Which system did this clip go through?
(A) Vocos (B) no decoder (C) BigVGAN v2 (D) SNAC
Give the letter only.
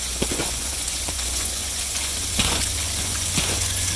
A